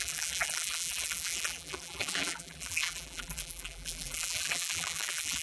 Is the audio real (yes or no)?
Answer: no